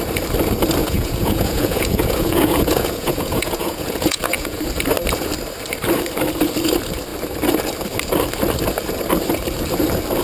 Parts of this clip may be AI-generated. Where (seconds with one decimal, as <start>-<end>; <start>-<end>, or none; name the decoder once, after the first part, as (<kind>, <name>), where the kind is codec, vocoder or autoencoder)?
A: 0.8-4.6 (vocoder, Vocos)